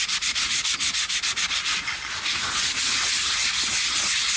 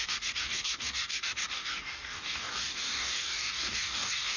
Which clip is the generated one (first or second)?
second